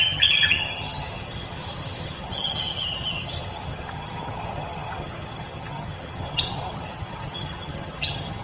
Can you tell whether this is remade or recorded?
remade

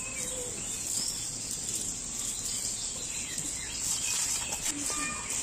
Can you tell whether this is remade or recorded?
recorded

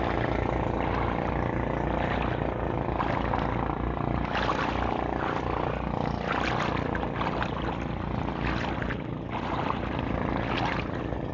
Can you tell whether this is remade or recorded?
recorded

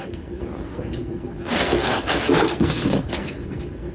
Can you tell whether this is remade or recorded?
remade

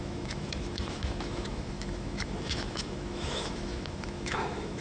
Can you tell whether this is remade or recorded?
remade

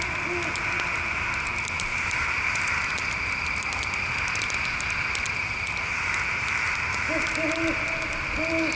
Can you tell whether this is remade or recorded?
recorded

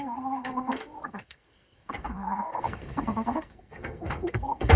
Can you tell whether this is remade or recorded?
remade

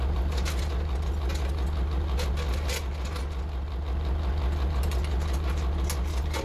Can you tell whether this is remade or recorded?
recorded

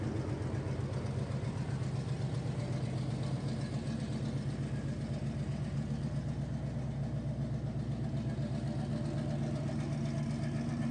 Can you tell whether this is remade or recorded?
recorded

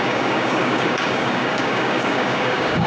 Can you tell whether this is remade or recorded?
remade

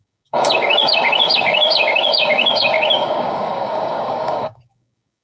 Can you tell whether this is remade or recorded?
remade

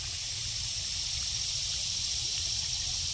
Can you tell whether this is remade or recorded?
recorded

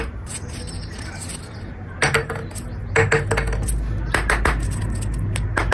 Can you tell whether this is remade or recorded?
recorded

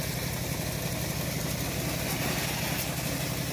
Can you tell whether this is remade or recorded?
recorded